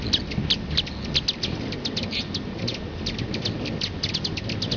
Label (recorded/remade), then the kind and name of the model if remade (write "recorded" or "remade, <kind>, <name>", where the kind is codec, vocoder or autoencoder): recorded